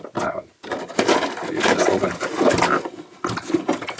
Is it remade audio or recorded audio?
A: recorded